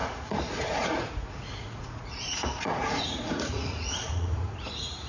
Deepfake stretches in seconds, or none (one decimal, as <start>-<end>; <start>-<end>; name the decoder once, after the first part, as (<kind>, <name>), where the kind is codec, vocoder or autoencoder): 0.0-5.1 (vocoder, Vocos)